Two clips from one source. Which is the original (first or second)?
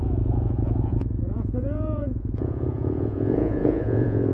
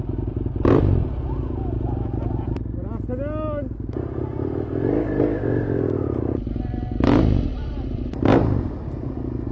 second